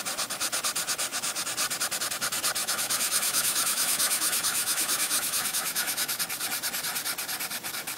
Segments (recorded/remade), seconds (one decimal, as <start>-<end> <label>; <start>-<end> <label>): 0.0-2.6 recorded; 2.6-6.2 remade; 6.2-8.0 recorded

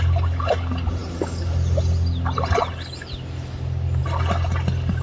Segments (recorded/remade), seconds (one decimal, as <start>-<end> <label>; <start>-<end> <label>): 0.0-5.0 recorded

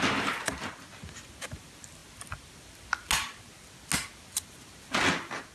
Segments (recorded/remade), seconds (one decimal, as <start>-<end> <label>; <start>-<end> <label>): 0.0-5.5 recorded

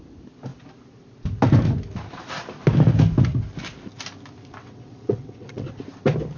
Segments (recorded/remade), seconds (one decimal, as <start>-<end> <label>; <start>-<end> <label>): 0.0-4.6 recorded; 4.6-5.7 remade; 5.7-6.4 recorded

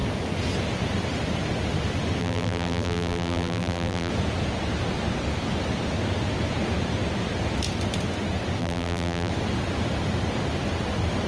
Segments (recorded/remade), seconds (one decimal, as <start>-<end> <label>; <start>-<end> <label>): 0.0-2.2 recorded; 2.2-4.1 remade; 4.1-8.6 recorded; 8.6-9.3 remade; 9.3-11.3 recorded